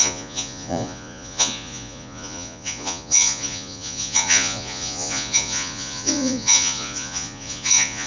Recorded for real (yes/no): no